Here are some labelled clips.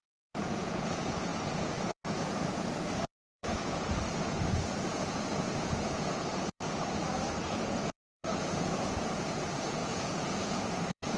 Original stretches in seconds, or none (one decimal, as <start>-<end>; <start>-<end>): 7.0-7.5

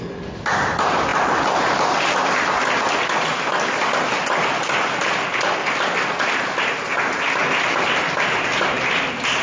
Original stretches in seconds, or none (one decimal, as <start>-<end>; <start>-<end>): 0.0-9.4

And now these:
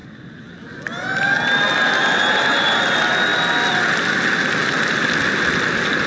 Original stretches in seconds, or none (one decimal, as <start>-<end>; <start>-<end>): 0.0-6.1

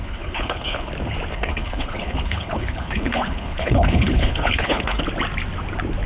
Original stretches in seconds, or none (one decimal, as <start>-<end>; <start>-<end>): 0.9-1.3; 5.0-6.1

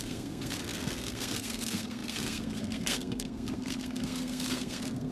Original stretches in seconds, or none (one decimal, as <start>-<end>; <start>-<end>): none

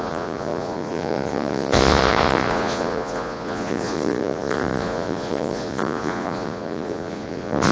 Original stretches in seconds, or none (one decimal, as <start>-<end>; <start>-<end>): none

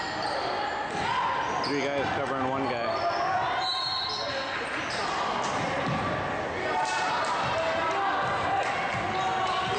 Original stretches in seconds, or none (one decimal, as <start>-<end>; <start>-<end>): 0.0-9.8